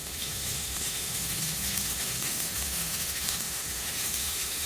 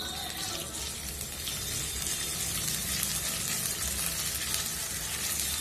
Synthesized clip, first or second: first